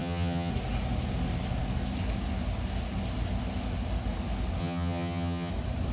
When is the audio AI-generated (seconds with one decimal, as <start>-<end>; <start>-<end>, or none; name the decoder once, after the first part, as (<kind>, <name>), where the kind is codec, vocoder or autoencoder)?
0.0-0.5 (vocoder, HiFi-GAN); 4.6-5.5